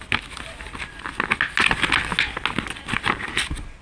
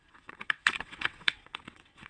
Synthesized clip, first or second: second